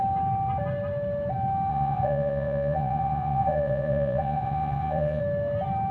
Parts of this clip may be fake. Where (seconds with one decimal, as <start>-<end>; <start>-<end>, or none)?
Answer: 1.7-5.2